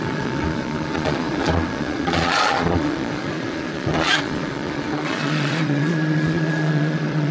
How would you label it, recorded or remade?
remade